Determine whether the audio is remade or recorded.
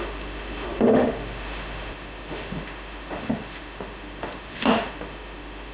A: remade